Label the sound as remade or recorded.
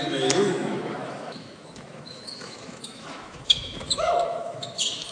remade